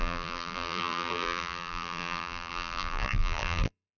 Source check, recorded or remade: remade